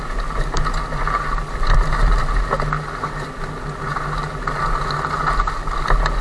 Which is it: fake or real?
real